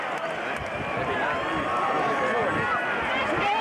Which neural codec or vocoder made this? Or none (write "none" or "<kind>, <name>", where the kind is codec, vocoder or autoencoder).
none